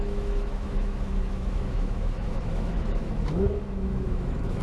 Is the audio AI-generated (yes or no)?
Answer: yes